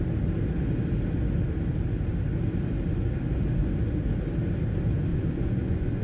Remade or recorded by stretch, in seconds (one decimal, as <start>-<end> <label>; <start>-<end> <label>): 0.0-5.1 recorded; 5.1-6.0 remade